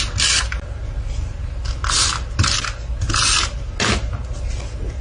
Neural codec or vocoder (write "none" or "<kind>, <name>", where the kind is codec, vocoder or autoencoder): none